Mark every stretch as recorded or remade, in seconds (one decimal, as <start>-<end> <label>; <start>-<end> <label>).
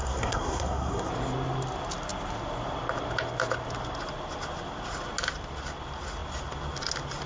0.0-1.1 remade; 1.1-7.3 recorded